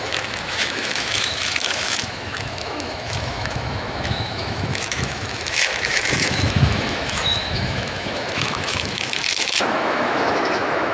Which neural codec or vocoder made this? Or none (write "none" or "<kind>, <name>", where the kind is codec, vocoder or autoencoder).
autoencoder, DAC-VAE